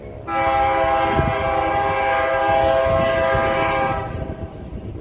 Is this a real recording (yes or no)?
yes